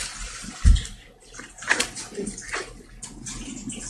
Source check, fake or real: real